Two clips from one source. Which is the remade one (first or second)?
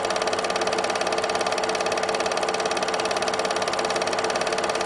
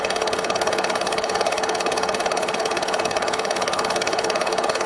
second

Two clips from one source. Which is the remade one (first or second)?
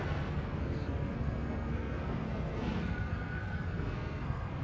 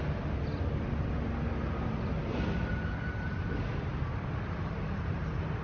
first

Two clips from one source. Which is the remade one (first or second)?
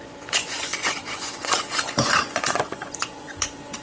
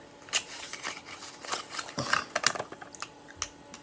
first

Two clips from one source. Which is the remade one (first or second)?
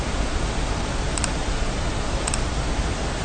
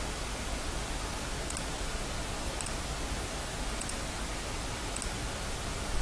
first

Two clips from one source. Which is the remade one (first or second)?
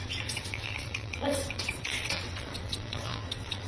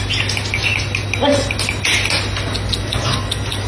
first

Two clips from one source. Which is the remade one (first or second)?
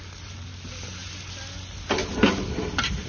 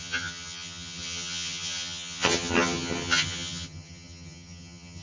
second